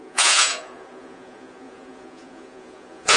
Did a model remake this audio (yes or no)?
yes